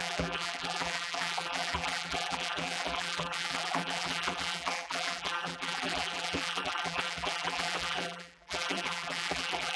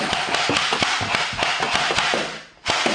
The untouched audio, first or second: second